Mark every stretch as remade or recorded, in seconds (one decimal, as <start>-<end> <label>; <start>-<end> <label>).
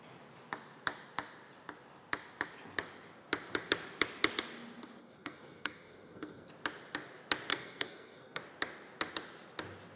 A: 0.0-5.0 recorded; 5.0-6.5 remade; 6.5-7.5 recorded; 7.5-8.4 remade; 8.4-10.0 recorded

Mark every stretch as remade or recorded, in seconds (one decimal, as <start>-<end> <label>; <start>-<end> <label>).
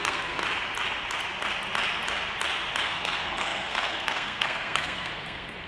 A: 0.0-0.4 remade; 0.4-2.8 recorded; 2.8-5.7 remade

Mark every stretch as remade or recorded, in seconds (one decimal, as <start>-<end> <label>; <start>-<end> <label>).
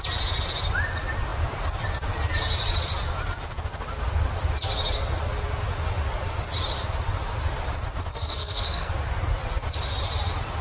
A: 0.0-8.1 recorded; 8.1-8.9 remade; 8.9-10.6 recorded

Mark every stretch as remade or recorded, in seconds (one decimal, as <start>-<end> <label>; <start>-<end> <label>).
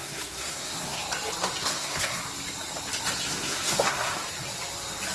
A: 0.0-1.0 remade; 1.0-1.6 recorded; 1.6-2.2 remade; 2.2-3.4 recorded; 3.4-4.1 remade; 4.1-5.1 recorded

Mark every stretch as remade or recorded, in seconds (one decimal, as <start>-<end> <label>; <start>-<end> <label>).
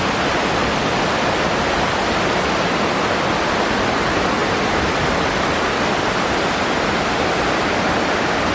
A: 0.0-8.5 recorded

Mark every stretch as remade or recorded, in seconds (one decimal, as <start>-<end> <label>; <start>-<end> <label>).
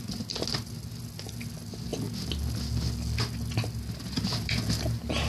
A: 0.0-5.3 recorded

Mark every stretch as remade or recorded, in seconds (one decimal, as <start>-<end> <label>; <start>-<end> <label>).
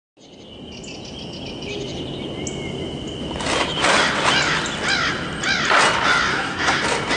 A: 0.0-6.3 recorded; 6.3-6.8 remade; 6.8-7.2 recorded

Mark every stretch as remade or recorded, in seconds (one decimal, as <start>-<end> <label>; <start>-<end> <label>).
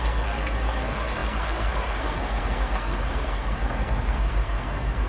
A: 0.0-5.1 remade